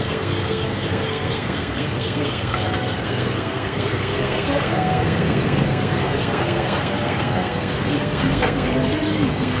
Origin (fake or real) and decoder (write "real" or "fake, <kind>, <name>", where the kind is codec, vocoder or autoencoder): fake, codec, SNAC